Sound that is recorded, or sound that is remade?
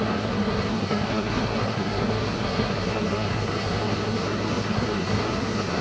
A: remade